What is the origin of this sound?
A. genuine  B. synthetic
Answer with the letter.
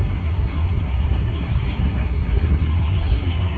B